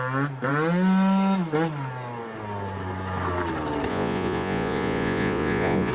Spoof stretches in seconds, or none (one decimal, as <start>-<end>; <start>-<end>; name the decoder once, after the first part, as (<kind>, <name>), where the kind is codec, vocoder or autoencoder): 3.9-5.9 (vocoder, Vocos)